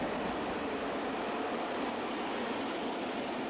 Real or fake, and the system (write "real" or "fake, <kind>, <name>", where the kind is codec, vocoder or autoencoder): real